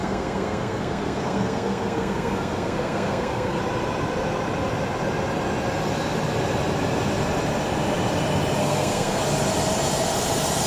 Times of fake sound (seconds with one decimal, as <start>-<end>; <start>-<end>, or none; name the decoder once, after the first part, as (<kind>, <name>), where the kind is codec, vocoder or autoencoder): 0.0-3.6 (codec, SNAC); 8.6-9.2